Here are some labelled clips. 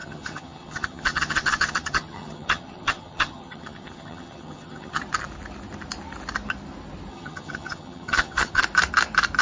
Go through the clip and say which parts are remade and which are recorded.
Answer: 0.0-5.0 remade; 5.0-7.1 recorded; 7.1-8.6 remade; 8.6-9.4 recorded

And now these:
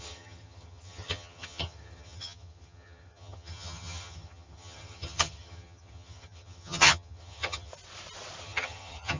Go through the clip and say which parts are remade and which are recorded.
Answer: 0.0-7.7 remade; 7.7-8.4 recorded; 8.4-9.2 remade